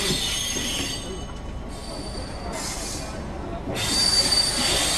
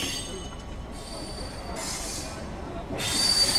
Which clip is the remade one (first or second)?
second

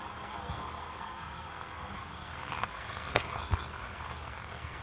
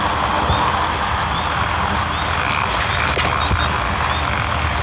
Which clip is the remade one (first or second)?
first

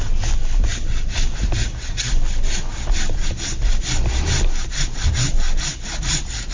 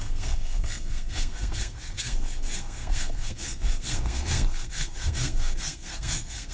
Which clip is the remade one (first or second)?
second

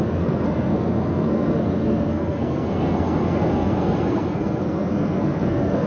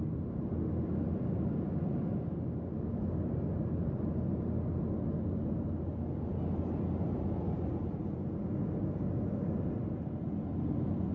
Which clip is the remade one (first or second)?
first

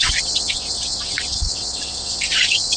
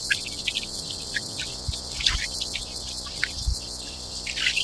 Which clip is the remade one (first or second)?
first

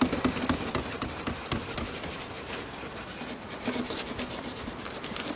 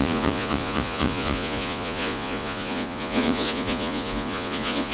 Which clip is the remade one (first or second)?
second